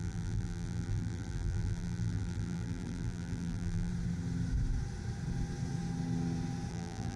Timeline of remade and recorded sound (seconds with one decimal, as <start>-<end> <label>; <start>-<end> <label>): 0.0-3.9 remade; 3.9-6.7 recorded; 6.7-7.2 remade